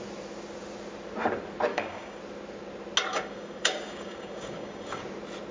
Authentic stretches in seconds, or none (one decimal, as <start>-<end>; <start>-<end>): 0.0-1.7; 2.2-3.1; 5.0-5.5